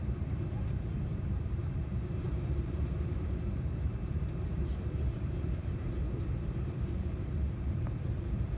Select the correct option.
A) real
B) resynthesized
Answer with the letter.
B